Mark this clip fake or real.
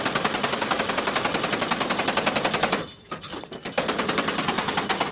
real